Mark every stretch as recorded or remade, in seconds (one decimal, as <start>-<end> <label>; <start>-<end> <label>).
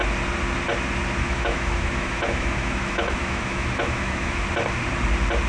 0.0-1.2 recorded; 1.2-4.4 remade; 4.4-5.5 recorded